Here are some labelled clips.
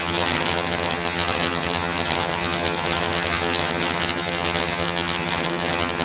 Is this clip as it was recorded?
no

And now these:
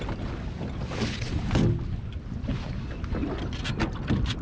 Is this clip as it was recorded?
yes